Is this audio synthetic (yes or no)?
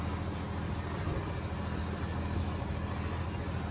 no